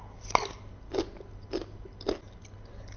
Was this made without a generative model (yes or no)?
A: yes